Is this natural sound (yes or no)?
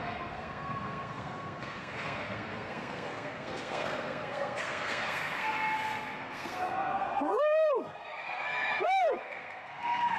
no